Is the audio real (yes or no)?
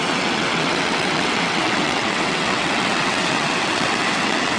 no